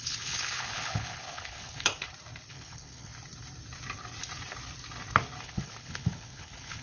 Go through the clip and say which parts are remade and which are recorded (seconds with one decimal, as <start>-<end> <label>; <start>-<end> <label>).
0.0-1.9 remade; 1.9-2.5 recorded; 2.5-3.1 remade; 3.1-5.4 recorded; 5.4-6.8 remade